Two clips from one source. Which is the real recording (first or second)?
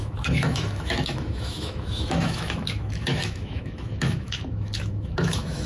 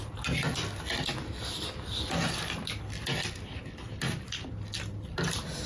second